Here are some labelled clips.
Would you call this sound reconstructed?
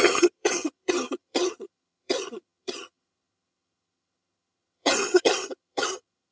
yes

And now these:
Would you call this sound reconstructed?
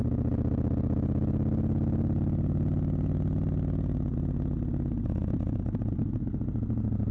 no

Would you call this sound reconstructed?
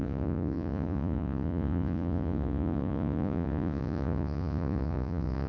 yes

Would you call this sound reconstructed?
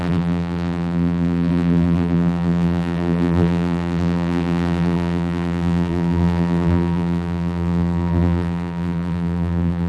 yes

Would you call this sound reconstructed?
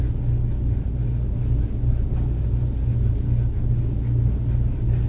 no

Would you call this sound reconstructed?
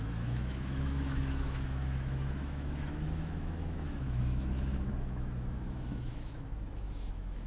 yes